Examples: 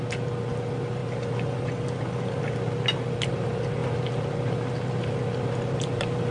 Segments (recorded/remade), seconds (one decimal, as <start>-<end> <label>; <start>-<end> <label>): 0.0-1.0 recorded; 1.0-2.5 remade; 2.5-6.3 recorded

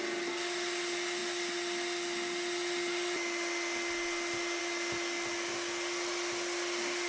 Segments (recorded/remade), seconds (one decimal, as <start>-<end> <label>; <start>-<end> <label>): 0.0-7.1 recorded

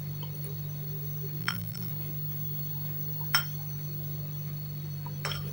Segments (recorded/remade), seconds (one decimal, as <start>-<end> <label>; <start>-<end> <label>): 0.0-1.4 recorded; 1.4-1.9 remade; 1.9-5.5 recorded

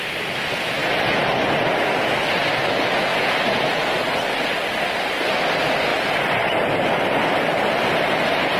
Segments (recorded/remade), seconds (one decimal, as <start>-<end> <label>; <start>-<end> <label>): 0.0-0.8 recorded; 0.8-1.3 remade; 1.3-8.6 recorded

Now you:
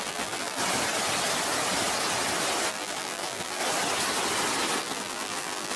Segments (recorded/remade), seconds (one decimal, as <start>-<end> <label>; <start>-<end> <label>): 0.0-0.6 remade; 0.6-2.7 recorded; 2.7-3.6 remade; 3.6-4.8 recorded; 4.8-5.8 remade

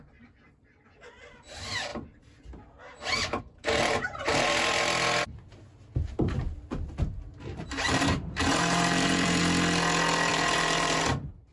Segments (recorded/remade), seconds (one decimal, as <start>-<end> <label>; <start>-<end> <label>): 0.0-1.9 recorded; 1.9-3.4 remade; 3.4-7.3 recorded; 7.3-9.4 remade; 9.4-10.3 recorded; 10.3-11.0 remade; 11.0-11.5 recorded

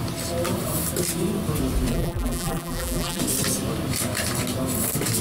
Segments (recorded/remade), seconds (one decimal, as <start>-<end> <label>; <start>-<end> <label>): 0.0-1.9 recorded; 1.9-3.2 remade; 3.2-5.2 recorded